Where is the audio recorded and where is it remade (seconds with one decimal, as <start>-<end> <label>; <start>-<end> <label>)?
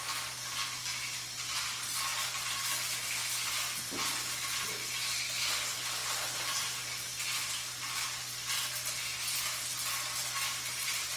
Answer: 0.0-11.2 recorded